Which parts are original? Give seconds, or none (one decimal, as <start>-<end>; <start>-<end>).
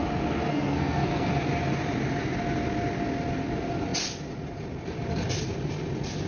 0.0-0.5; 1.3-6.3